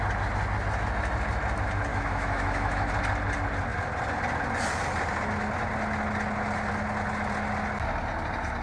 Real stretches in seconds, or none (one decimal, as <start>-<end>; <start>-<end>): 0.0-1.9; 2.9-8.6